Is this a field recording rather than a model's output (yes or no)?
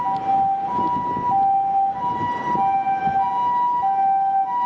yes